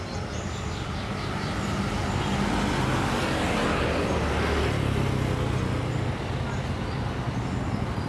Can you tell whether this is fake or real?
real